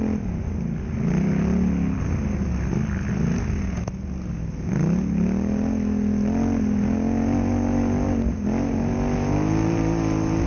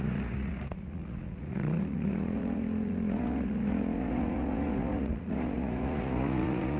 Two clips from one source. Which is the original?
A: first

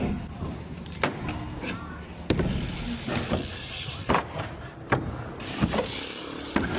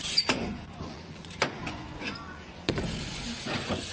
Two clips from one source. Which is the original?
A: first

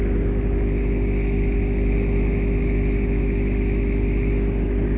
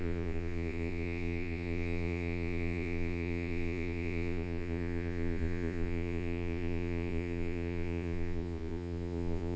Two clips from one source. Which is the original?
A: first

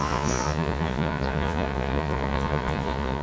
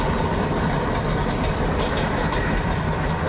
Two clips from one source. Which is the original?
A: second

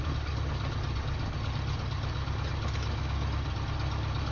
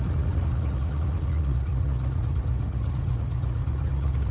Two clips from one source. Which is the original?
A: first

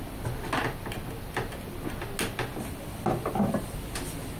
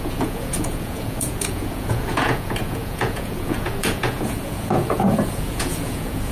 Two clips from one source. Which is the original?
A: first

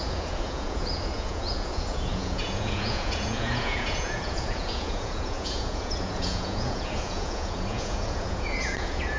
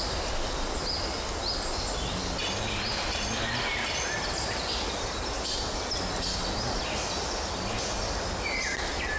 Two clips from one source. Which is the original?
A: second